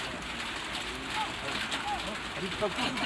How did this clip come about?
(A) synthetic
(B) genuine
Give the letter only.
B